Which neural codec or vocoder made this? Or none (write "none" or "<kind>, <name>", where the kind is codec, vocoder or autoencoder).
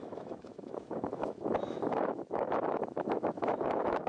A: autoencoder, DAC-VAE